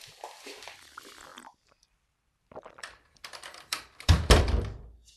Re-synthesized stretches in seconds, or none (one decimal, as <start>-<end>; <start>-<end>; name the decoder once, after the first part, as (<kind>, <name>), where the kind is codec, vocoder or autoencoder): 1.3-4.4 (vocoder, BigVGAN v2)